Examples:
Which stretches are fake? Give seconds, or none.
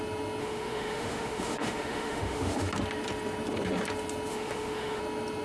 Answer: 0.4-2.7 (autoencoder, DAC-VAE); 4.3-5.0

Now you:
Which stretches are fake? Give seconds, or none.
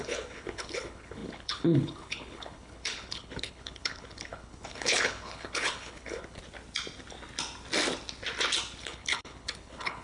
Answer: 0.0-6.4 (codec, HILCodec); 8.8-10.0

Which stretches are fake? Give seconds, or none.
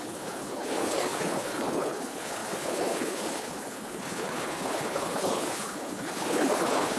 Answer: 0.0-7.0 (codec, HILCodec)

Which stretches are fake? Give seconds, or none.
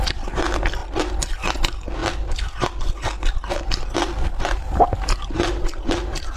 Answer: none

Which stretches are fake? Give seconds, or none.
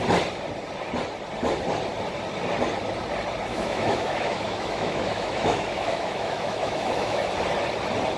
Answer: 3.5-7.3 (autoencoder, DAC-VAE)